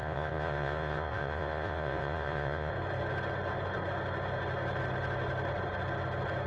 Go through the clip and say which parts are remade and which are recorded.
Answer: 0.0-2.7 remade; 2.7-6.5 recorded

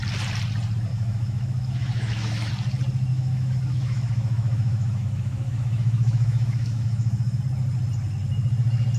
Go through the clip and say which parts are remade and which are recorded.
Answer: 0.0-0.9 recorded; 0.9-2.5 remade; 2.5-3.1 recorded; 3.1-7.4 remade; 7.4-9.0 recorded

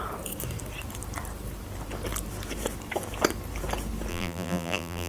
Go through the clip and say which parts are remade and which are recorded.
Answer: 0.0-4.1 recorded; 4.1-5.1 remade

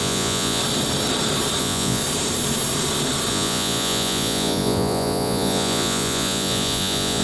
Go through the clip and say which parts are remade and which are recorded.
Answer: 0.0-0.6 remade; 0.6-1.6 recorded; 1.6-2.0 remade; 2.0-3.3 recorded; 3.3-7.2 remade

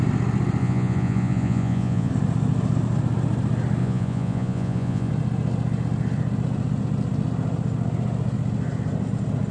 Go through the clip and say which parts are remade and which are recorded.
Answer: 0.0-0.6 recorded; 0.6-2.1 remade; 2.1-3.8 recorded; 3.8-5.1 remade; 5.1-9.5 recorded

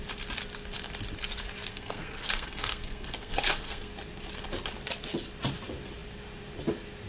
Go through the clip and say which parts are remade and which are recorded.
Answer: 0.0-1.7 recorded; 1.7-3.9 remade; 3.9-7.1 recorded

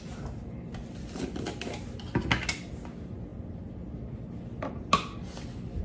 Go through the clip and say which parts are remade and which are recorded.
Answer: 0.0-5.8 recorded